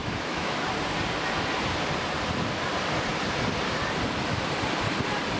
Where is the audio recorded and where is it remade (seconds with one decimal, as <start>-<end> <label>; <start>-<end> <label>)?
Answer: 0.0-0.7 remade; 0.7-5.4 recorded